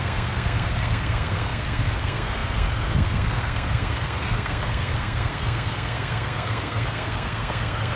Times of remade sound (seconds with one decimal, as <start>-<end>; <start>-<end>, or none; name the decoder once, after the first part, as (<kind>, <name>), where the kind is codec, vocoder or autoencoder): 0.0-8.0 (codec, SNAC)